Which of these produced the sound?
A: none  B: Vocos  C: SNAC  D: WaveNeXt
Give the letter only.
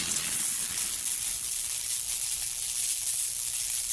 A